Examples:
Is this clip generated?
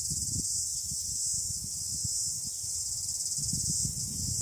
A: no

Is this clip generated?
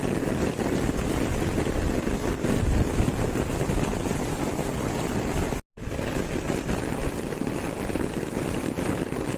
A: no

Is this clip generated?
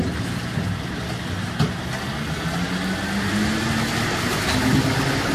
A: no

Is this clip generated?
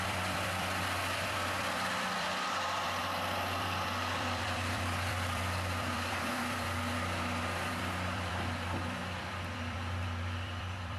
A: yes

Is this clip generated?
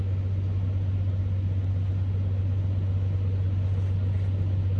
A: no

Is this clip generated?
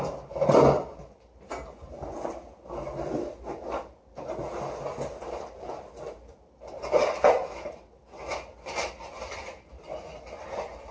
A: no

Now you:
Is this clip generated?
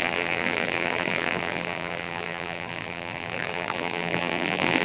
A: yes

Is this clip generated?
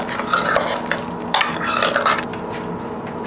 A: no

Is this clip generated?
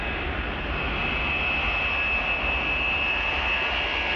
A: no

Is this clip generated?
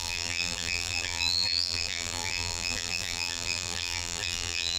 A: yes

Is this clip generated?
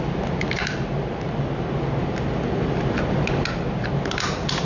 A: no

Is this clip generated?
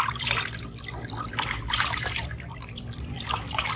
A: yes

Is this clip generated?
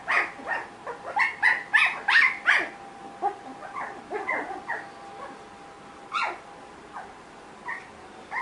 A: no